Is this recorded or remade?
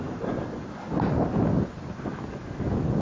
recorded